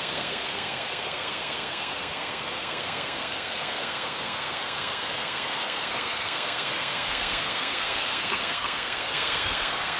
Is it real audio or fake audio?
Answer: fake